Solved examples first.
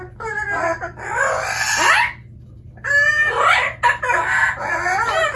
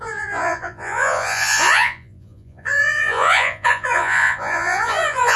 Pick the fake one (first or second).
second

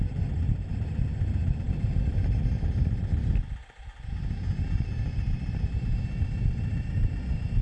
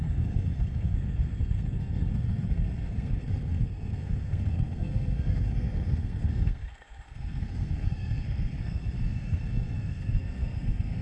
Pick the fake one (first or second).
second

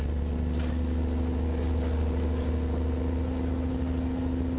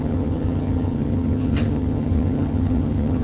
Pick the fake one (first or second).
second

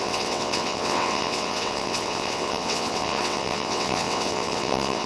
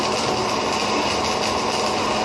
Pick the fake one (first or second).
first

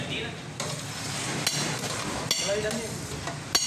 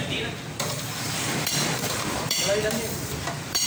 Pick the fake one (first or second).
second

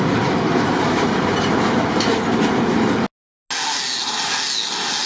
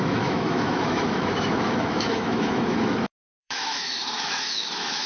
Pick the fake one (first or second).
second